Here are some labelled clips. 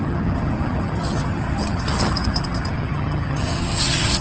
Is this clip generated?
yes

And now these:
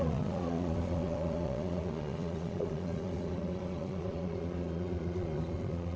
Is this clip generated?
yes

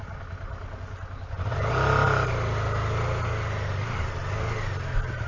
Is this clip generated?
no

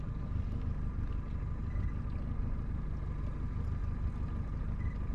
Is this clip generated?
no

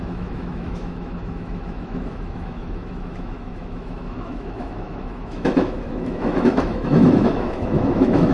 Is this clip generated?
yes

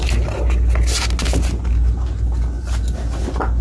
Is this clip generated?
no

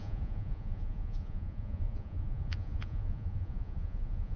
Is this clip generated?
yes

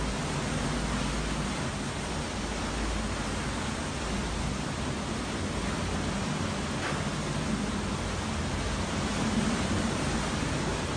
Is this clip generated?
no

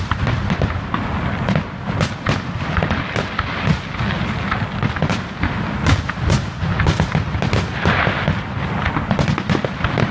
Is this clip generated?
no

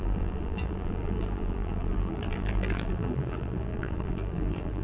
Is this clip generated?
yes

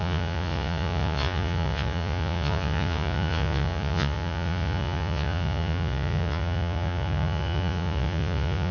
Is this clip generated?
yes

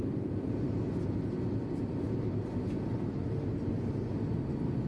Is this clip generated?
no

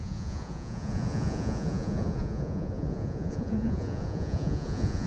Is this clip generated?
yes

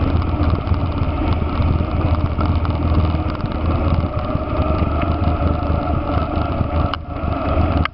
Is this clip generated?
no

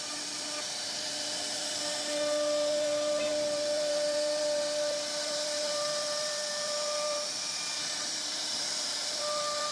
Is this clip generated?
yes